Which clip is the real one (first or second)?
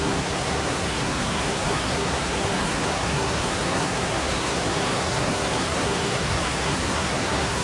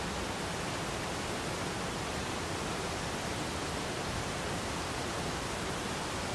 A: second